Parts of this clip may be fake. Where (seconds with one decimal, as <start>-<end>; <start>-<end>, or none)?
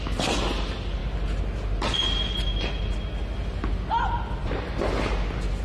none